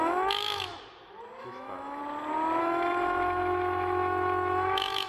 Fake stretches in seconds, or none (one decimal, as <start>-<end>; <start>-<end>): 0.0-0.7; 1.4-2.0; 2.6-5.1